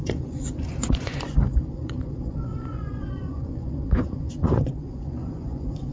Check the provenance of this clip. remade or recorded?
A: remade